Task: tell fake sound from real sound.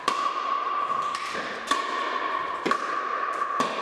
fake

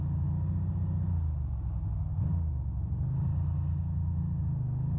real